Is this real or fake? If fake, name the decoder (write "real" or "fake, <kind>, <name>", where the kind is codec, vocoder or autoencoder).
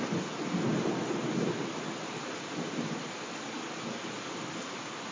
real